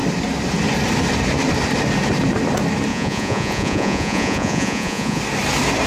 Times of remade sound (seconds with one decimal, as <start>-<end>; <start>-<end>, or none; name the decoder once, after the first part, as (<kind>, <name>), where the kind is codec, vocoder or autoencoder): 2.9-5.2 (vocoder, Vocos)